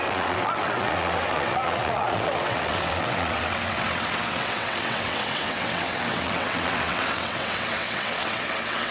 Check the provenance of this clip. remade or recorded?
remade